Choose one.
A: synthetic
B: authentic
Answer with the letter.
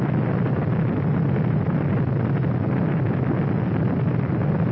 B